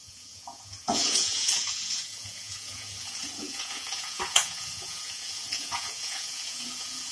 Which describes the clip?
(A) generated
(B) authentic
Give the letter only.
A